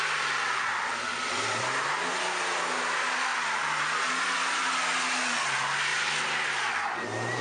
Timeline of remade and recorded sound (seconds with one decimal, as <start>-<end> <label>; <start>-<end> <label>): 0.0-1.1 recorded; 1.1-1.6 remade; 1.6-7.4 recorded